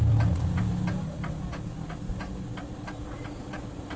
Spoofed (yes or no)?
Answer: no